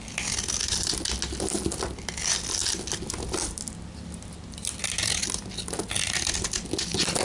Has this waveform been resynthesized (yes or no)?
no